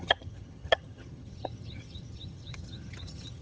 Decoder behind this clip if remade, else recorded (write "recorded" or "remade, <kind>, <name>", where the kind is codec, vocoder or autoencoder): remade, vocoder, HiFi-GAN